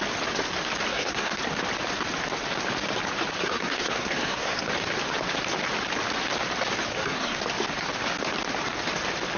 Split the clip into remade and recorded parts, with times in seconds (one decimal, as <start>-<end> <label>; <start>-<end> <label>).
0.0-0.9 recorded; 0.9-1.4 remade; 1.4-3.4 recorded; 3.4-4.7 remade; 4.7-6.9 recorded; 6.9-7.4 remade; 7.4-9.4 recorded